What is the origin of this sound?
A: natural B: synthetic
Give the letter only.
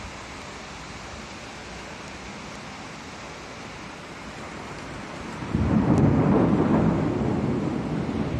A